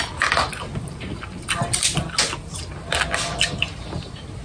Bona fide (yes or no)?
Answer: yes